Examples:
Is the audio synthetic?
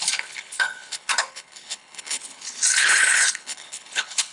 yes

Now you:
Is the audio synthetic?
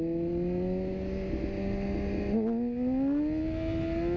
no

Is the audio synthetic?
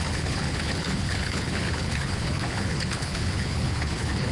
yes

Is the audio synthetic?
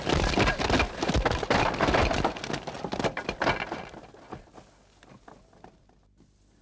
no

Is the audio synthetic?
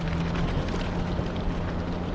no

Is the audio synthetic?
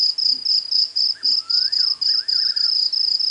no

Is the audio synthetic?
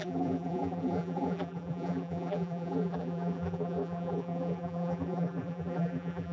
yes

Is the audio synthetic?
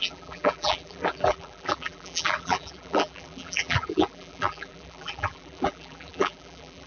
yes